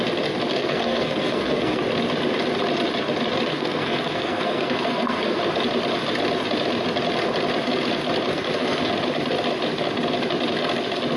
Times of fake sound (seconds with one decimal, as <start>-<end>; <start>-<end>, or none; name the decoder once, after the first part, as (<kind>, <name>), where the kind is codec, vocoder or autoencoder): 0.5-1.8 (codec, SNAC); 3.5-5.4; 8.3-8.9